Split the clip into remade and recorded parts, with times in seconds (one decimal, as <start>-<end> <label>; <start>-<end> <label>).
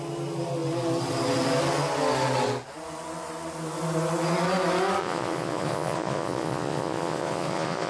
0.0-5.0 recorded; 5.0-7.9 remade